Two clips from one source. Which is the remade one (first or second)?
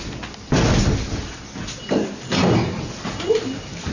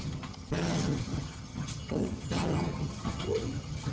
second